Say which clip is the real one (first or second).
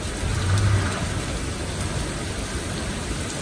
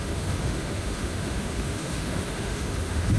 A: first